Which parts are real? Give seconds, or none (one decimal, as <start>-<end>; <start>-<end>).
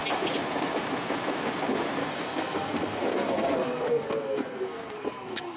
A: 0.0-2.0